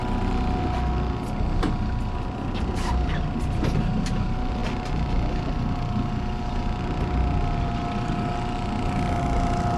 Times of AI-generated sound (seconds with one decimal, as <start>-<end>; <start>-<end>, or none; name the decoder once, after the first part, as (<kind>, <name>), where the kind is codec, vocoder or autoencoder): none